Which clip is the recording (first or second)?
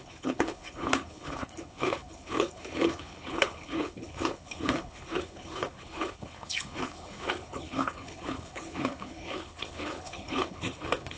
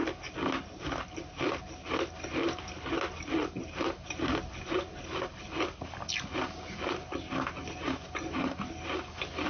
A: second